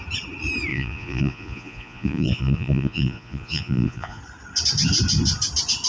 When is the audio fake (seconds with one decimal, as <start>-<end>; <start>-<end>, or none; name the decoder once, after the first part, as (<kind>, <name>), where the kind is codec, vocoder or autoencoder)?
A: 0.7-4.2 (vocoder, Vocos)